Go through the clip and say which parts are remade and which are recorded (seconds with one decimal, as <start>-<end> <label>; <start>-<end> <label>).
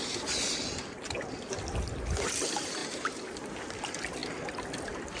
0.0-5.2 recorded